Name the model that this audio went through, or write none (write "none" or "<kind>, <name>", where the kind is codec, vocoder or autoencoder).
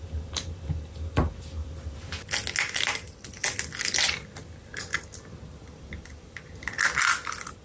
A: none